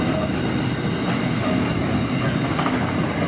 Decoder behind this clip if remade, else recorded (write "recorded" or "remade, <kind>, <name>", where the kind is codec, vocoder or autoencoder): recorded